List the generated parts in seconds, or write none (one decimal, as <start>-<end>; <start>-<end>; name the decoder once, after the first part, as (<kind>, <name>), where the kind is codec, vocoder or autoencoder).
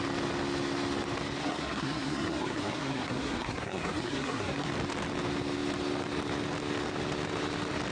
1.4-4.7 (codec, SNAC)